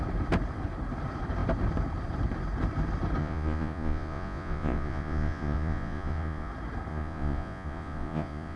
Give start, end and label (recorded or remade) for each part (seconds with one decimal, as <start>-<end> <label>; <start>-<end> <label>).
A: 0.0-3.2 recorded; 3.2-6.5 remade; 6.5-6.9 recorded; 6.9-8.6 remade